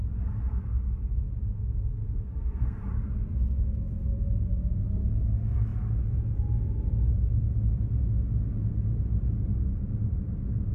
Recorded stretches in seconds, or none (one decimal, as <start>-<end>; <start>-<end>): 0.0-2.3; 2.8-10.7